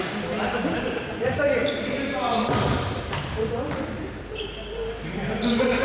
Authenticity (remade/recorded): recorded